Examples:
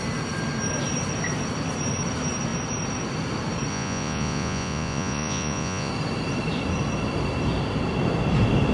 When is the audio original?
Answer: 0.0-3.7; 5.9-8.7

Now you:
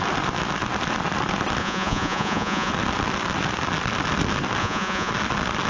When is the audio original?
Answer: 0.0-1.6; 2.7-4.6; 5.1-5.7

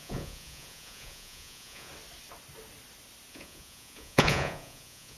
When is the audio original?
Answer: 1.9-3.3

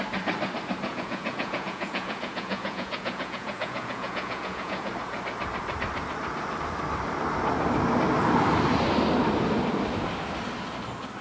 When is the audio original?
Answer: 0.0-0.9; 4.9-11.2

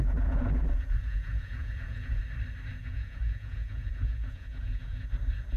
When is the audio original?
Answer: 2.2-2.8; 5.1-5.6